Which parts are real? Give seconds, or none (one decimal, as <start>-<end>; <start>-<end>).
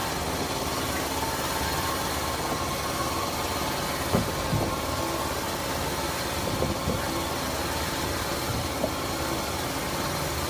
0.0-10.5